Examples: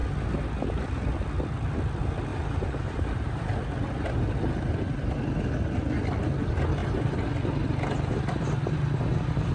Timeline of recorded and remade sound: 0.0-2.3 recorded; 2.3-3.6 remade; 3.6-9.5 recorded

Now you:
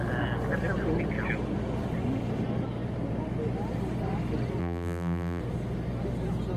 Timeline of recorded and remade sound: 0.0-4.6 recorded; 4.6-5.4 remade; 5.4-6.6 recorded